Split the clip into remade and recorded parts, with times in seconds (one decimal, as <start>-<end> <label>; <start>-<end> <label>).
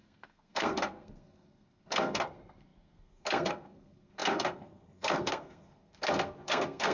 0.0-6.9 remade